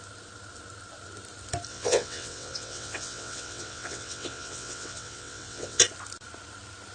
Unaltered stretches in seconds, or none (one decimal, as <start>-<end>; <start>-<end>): 0.0-1.7; 5.8-6.9